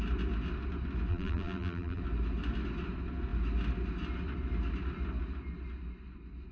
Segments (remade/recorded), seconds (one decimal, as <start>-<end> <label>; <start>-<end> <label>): 0.0-1.1 recorded; 1.1-2.0 remade; 2.0-6.5 recorded